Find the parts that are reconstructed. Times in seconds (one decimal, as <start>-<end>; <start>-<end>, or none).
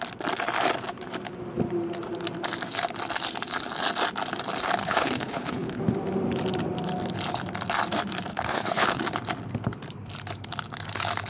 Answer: 4.8-5.8; 8.3-9.0